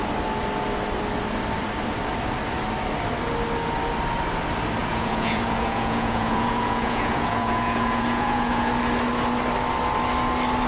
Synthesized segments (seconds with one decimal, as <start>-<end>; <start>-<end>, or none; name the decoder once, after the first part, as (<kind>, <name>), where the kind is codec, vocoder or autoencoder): 4.8-8.7 (vocoder, Vocos)